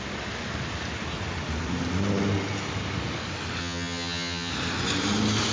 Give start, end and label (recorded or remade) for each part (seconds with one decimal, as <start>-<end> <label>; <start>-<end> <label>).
0.0-3.6 recorded; 3.6-4.5 remade; 4.5-5.5 recorded